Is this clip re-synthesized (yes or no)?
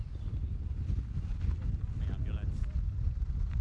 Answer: no